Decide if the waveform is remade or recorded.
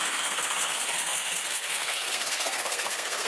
remade